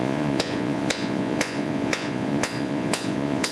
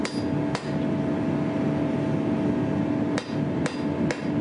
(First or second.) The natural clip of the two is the second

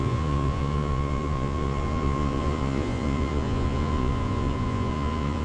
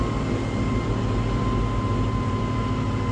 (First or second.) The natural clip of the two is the second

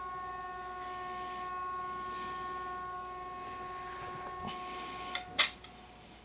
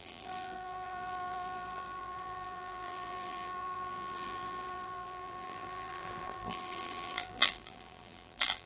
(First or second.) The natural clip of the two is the first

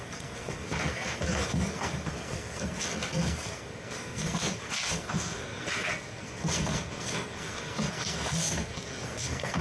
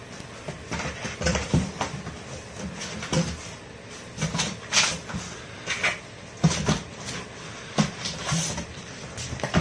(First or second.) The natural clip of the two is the second